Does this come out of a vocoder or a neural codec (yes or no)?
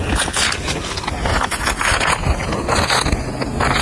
no